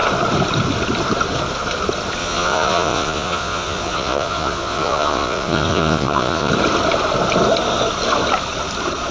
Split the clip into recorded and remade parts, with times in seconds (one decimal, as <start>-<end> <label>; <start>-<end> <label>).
0.0-2.2 recorded; 2.2-6.5 remade; 6.5-9.1 recorded